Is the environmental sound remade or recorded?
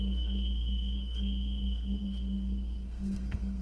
remade